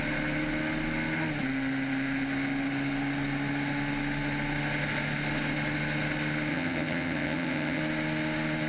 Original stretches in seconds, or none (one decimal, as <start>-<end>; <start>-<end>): 0.0-6.5; 7.8-8.7